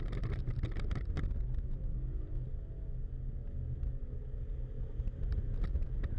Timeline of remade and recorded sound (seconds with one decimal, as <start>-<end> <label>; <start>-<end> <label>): 0.0-6.2 recorded